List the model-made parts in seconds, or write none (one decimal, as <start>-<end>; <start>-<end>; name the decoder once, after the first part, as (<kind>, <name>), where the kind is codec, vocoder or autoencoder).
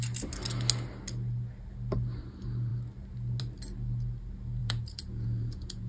4.6-5.9 (vocoder, Vocos)